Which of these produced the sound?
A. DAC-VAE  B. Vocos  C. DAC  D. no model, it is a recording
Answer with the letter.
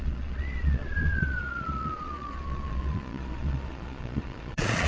B